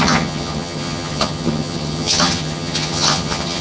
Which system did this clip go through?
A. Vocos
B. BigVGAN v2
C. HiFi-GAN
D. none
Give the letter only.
C